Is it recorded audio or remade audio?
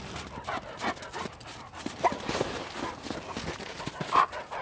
recorded